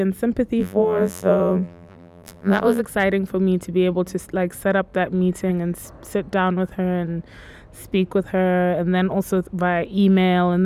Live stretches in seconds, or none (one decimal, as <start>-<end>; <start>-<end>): 0.0-0.6; 2.8-10.7